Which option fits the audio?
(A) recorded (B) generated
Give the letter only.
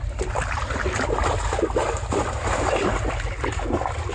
A